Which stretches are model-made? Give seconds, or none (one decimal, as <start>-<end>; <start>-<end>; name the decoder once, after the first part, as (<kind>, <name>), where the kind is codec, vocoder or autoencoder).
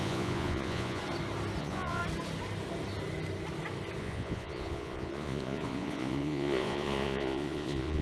0.0-1.0 (vocoder, Vocos); 1.6-2.0; 4.0-8.0